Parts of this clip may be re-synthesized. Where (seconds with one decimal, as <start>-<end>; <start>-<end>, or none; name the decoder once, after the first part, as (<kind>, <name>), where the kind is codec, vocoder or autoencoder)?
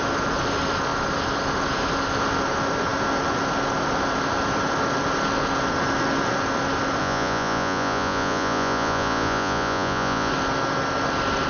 7.0-10.3 (vocoder, Vocos)